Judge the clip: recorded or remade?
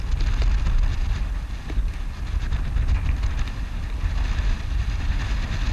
recorded